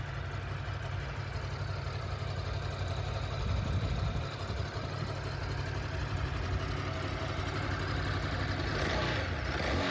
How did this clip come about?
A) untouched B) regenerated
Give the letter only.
A